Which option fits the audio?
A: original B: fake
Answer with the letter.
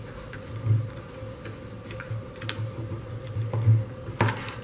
A